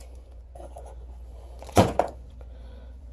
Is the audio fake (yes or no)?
yes